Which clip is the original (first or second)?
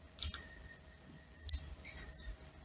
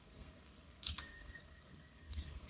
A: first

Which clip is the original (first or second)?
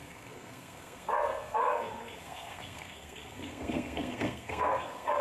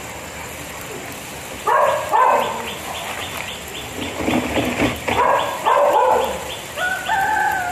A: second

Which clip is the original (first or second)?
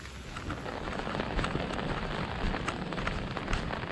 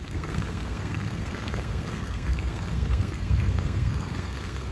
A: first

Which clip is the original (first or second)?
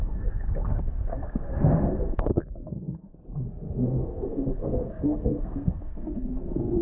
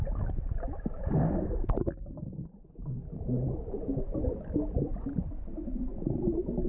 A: second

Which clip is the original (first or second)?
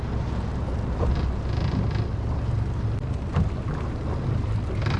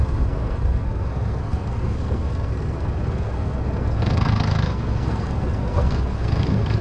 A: first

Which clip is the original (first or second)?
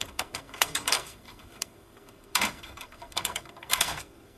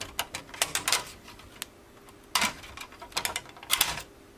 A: second